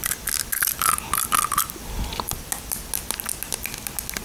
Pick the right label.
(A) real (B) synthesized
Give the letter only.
A